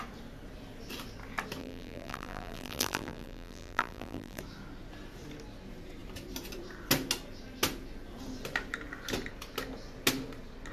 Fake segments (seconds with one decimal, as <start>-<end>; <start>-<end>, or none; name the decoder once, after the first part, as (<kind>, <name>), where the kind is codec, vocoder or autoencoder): 1.6-4.4 (vocoder, BigVGAN v2)